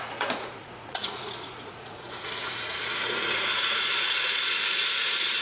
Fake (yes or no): yes